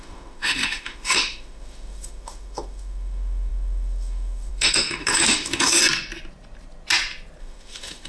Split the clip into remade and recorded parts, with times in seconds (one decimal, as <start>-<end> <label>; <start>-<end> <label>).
0.0-5.8 remade; 5.8-7.4 recorded; 7.4-8.1 remade